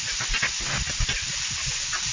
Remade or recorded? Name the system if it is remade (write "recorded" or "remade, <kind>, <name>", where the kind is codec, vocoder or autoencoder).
recorded